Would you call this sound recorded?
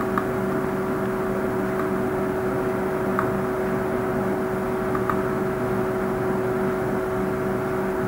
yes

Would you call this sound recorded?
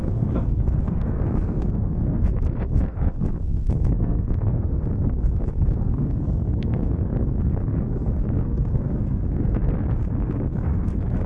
no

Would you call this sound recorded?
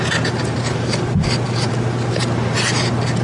yes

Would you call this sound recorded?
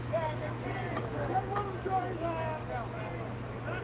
yes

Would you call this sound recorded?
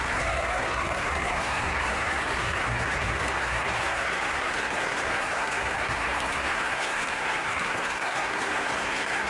no